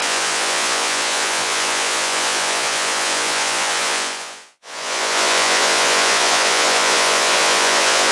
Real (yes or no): no